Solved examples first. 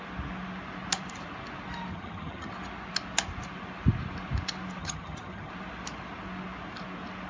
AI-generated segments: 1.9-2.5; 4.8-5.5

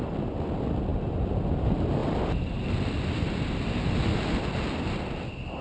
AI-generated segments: none